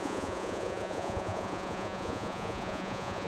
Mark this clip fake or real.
fake